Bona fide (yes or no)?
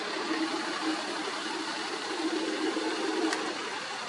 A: no